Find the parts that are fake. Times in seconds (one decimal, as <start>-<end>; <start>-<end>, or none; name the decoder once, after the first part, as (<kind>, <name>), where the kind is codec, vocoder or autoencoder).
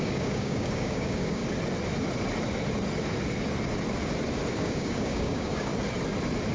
0.0-1.4 (codec, DAC); 4.5-5.7